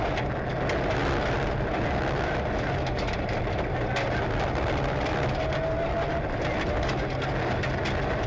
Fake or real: real